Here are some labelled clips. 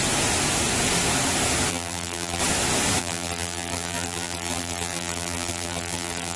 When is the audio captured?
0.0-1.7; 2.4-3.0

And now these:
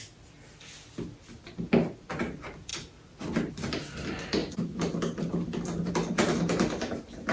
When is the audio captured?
0.0-7.3

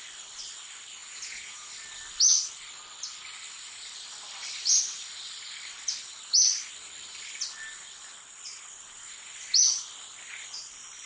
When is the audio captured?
0.0-1.0; 1.7-11.1

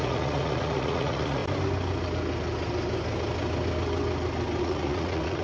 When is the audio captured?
1.4-4.6

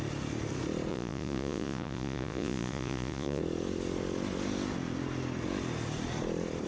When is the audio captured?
0.0-0.9; 3.4-6.7

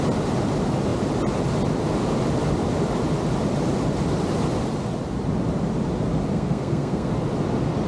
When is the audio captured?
0.0-6.3; 7.1-7.9

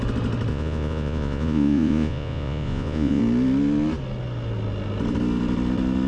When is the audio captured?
0.0-0.5; 3.2-6.1

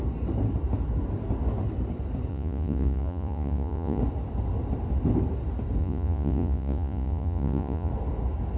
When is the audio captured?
0.0-2.3; 4.0-5.8; 7.9-8.6